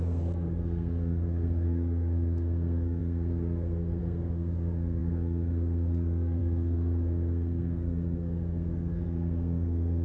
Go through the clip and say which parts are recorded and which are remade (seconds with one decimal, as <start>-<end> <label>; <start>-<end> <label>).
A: 0.0-10.0 remade